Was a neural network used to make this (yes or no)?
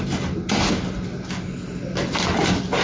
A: no